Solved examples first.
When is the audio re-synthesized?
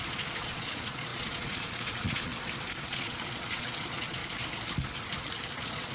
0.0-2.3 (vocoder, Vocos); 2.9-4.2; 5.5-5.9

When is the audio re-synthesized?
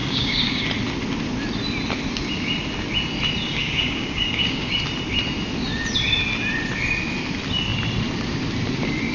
0.0-0.6 (codec, DAC); 3.6-4.7